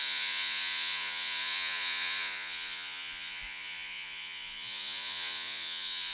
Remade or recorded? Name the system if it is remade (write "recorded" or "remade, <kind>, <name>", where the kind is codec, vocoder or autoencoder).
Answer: remade, vocoder, Vocos